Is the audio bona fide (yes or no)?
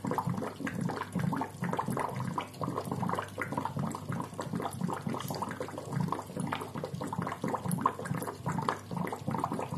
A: yes